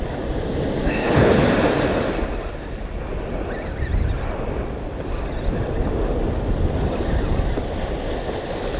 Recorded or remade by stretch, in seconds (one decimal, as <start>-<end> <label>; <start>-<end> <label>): 0.0-1.0 recorded; 1.0-1.5 remade; 1.5-8.8 recorded